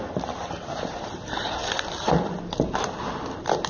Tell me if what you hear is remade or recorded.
recorded